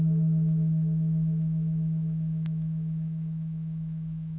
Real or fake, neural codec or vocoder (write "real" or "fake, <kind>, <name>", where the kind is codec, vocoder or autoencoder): fake, autoencoder, DAC-VAE